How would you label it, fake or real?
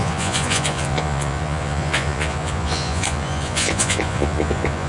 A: fake